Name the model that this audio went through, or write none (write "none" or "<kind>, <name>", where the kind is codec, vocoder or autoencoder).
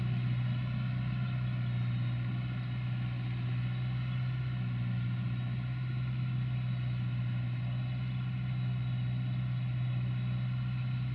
none